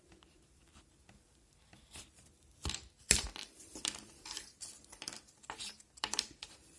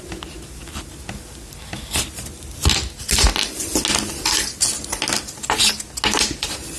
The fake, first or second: first